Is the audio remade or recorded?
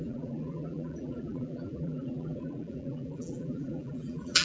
remade